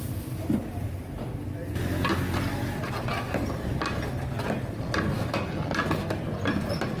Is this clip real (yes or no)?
yes